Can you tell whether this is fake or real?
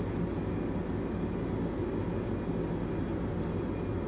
real